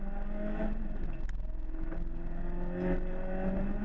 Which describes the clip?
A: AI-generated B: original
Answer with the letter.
B